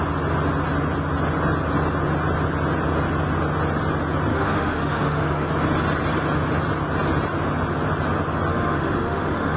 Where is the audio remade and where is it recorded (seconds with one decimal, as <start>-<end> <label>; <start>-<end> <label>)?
0.0-4.3 recorded; 4.3-5.5 remade; 5.5-8.5 recorded; 8.5-9.6 remade